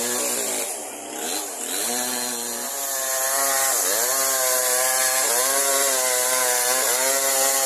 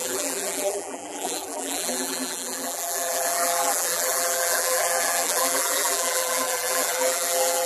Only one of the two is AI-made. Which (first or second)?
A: second